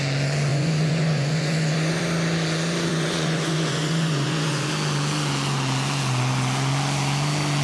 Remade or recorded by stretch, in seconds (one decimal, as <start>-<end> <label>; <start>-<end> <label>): 0.0-0.5 recorded; 0.5-2.0 remade; 2.0-2.9 recorded; 2.9-4.7 remade; 4.7-7.6 recorded